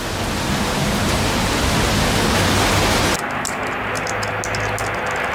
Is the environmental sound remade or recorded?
recorded